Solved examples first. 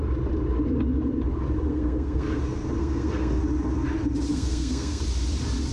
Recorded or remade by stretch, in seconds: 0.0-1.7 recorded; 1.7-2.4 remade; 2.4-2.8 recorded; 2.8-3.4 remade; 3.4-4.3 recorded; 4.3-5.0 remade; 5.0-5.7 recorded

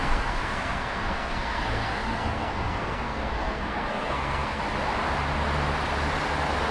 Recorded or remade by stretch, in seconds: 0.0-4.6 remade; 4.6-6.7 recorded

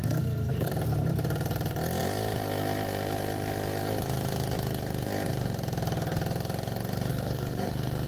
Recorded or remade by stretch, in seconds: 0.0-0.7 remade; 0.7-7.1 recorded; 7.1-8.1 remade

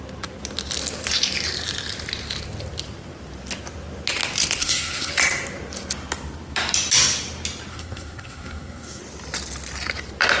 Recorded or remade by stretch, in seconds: 0.0-4.6 recorded; 4.6-5.1 remade; 5.1-7.7 recorded; 7.7-9.0 remade; 9.0-10.4 recorded

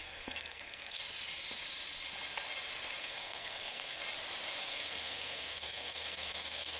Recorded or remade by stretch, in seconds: 0.0-1.0 remade; 1.0-3.0 recorded; 3.0-4.0 remade; 4.0-4.6 recorded; 4.6-6.8 remade

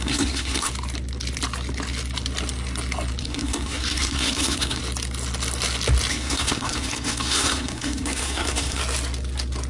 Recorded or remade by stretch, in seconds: 0.0-0.7 remade; 0.7-3.2 recorded; 3.2-4.8 remade; 4.8-6.1 recorded; 6.1-8.8 remade; 8.8-9.7 recorded

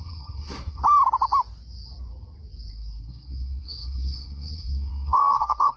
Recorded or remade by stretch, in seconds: 0.0-0.8 remade; 0.8-2.7 recorded; 2.7-5.8 remade

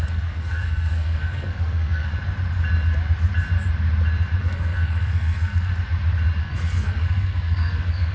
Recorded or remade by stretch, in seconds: 0.0-2.1 remade; 2.1-4.4 recorded; 4.4-5.7 remade; 5.7-6.4 recorded; 6.4-8.1 remade